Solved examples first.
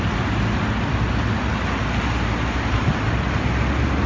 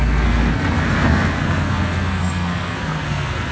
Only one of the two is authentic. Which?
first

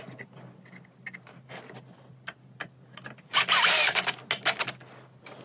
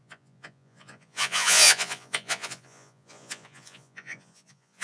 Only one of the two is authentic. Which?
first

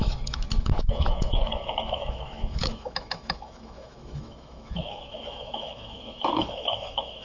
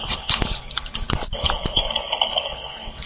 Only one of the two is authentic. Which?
second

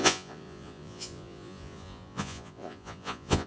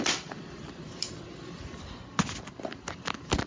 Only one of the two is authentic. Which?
second